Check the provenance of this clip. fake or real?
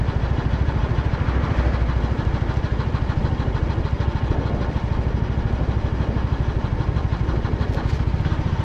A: real